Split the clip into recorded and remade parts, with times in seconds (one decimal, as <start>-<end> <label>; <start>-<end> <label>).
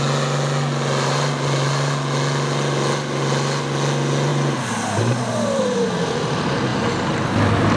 0.0-7.8 recorded